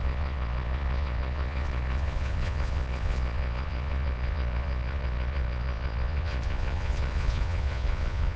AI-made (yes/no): yes